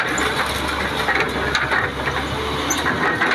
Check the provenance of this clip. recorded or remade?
recorded